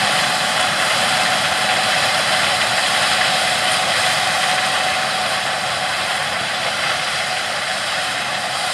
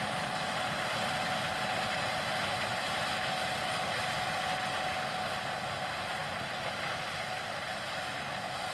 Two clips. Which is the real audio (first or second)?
second